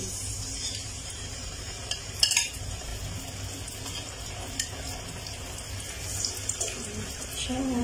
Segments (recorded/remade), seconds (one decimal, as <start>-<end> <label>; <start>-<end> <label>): 0.0-2.9 remade; 2.9-7.8 recorded